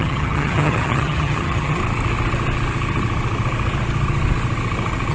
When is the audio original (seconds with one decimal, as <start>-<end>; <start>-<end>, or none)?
1.8-5.1